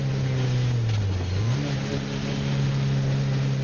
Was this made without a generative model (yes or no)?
yes